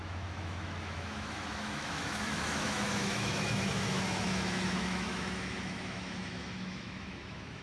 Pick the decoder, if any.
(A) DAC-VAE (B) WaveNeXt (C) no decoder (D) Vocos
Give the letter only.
A